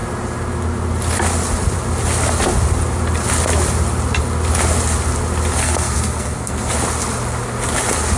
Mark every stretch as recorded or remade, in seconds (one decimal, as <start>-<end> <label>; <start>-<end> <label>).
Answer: 0.0-5.6 recorded; 5.6-6.7 remade; 6.7-8.2 recorded